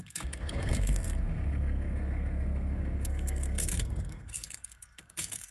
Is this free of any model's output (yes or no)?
no